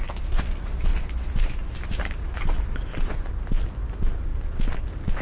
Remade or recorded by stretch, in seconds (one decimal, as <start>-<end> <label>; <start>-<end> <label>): 0.0-0.9 recorded; 0.9-3.5 remade; 3.5-5.2 recorded